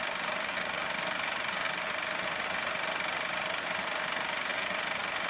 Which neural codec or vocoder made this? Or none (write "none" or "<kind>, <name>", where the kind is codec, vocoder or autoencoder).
none